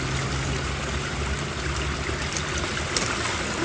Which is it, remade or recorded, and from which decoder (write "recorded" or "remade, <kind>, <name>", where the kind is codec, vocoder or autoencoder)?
recorded